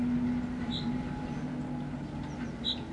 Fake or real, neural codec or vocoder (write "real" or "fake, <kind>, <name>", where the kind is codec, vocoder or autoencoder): real